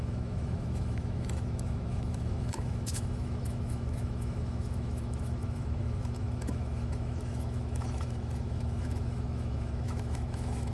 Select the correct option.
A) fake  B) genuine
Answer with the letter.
A